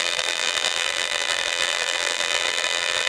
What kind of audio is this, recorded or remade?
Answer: remade